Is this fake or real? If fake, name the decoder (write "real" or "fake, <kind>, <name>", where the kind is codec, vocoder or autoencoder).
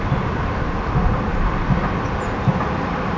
real